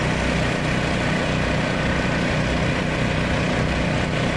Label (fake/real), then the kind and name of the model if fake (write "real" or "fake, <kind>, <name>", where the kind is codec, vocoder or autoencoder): real